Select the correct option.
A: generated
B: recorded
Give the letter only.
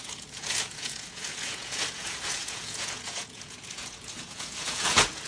A